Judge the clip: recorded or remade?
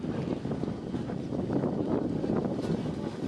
recorded